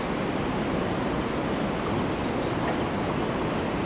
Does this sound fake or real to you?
real